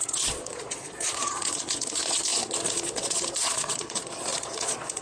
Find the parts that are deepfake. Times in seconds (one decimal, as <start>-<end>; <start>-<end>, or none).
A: 0.0-5.0